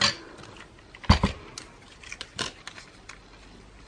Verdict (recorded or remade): recorded